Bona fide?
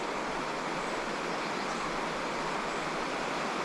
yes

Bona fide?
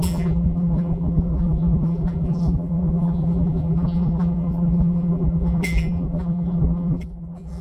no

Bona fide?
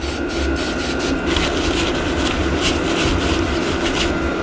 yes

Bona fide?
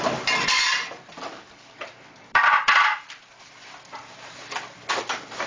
no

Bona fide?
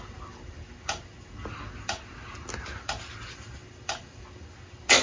yes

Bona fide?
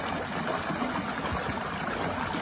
yes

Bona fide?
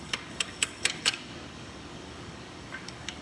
no